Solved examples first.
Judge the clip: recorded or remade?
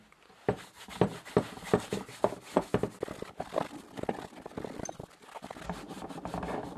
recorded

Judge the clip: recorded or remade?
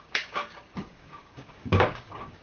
remade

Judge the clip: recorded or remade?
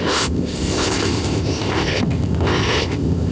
remade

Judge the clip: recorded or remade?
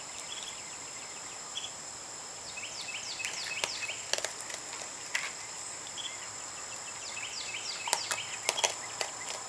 recorded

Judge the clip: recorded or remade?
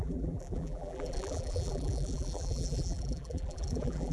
remade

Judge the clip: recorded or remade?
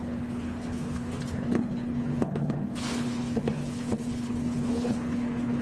remade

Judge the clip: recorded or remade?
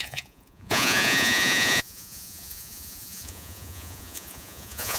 remade